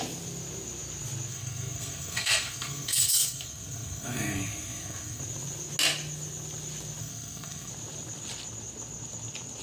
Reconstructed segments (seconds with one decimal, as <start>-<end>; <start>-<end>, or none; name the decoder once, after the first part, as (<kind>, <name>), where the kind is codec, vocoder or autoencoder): 1.3-5.2 (codec, SNAC); 7.0-7.7